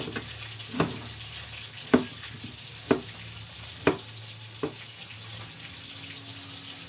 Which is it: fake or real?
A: real